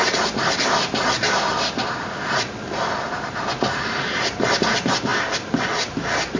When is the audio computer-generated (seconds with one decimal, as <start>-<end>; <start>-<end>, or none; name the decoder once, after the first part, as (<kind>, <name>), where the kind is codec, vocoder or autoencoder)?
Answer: none